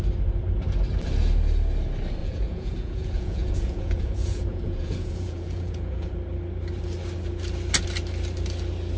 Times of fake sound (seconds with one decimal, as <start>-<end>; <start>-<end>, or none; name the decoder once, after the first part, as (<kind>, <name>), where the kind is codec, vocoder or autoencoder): 2.2-6.1 (vocoder, Vocos)